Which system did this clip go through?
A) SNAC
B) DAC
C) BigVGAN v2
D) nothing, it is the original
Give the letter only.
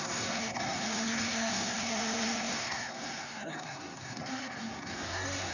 A